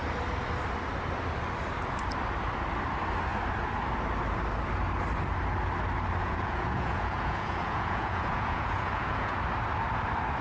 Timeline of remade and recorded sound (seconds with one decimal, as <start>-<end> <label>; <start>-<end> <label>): 0.0-6.2 recorded; 6.2-9.4 remade; 9.4-10.4 recorded